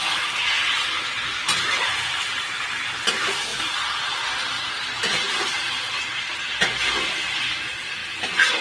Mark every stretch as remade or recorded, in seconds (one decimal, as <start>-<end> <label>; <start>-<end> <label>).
0.0-8.0 remade; 8.0-8.6 recorded